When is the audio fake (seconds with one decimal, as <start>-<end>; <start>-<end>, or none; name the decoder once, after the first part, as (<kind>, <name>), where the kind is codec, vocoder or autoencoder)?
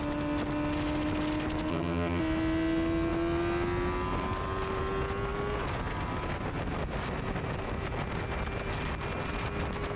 1.7-2.2 (vocoder, HiFi-GAN)